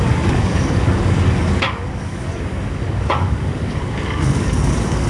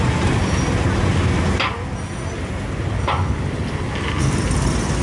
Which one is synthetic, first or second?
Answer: first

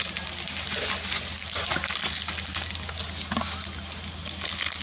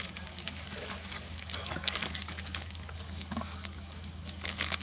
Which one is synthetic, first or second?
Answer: second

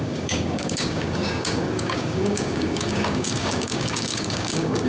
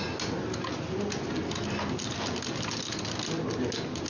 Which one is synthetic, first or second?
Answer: first